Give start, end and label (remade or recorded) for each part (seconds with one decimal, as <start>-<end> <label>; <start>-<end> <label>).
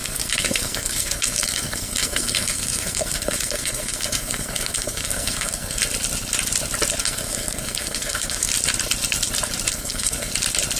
0.0-5.8 remade; 5.8-7.0 recorded; 7.0-8.5 remade; 8.5-9.7 recorded; 9.7-10.3 remade; 10.3-10.8 recorded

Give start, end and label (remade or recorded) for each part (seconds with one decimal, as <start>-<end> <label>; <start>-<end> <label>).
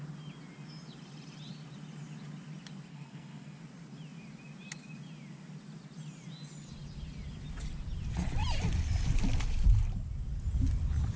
0.0-2.9 recorded; 2.9-3.6 remade; 3.6-11.2 recorded